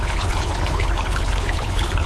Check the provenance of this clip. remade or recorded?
remade